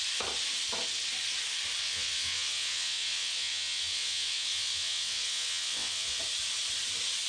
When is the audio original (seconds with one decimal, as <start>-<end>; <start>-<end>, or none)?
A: 0.0-1.8; 6.2-7.3